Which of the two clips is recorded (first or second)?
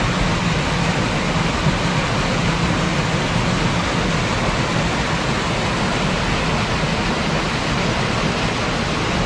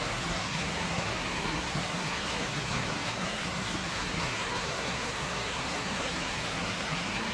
first